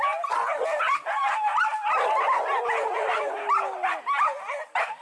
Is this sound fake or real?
real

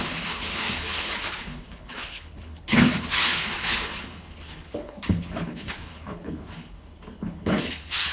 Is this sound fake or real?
fake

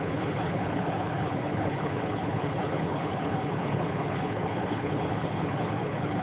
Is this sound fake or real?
fake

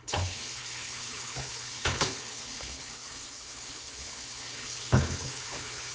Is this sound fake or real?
fake